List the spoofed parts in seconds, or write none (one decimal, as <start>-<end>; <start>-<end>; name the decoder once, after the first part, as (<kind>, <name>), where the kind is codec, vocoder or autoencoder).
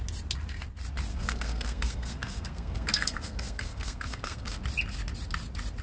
1.1-4.6 (codec, SNAC)